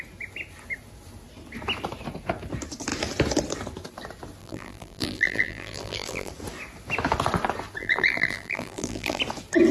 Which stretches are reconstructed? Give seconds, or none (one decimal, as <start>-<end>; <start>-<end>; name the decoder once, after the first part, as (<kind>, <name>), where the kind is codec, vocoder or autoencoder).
4.4-6.3 (vocoder, BigVGAN v2); 7.8-9.2